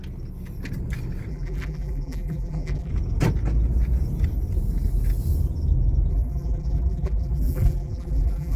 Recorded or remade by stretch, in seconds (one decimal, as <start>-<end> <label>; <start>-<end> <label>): 0.0-1.3 recorded; 1.3-2.9 remade; 2.9-6.1 recorded; 6.1-8.6 remade